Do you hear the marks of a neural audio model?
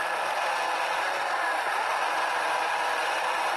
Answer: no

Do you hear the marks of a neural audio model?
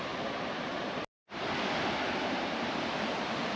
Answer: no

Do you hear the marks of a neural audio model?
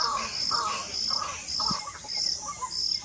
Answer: no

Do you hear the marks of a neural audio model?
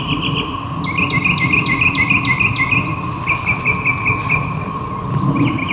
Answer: no